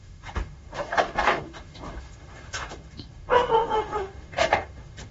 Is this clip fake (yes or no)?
yes